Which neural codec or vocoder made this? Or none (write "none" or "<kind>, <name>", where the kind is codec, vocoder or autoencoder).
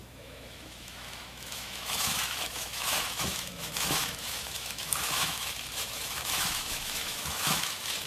autoencoder, DAC-VAE